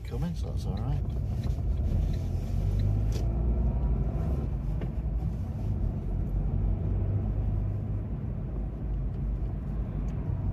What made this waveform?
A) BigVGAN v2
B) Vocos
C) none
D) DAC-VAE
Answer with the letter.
C